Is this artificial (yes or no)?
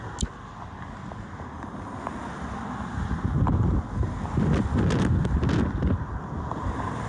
no